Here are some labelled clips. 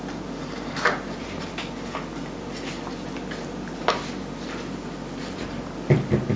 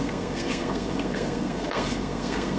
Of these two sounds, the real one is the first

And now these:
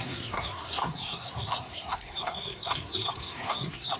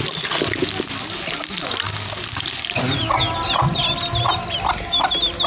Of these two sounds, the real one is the second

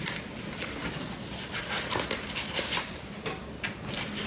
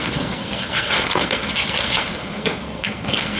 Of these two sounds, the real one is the first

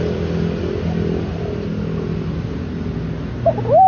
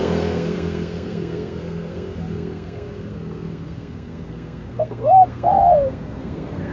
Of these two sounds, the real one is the first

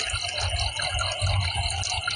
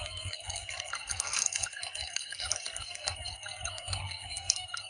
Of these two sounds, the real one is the first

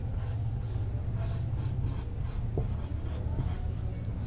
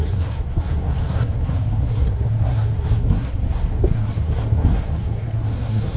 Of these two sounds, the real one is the first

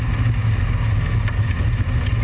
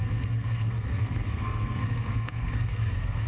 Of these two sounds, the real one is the first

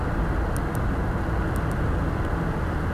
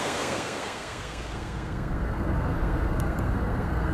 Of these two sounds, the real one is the first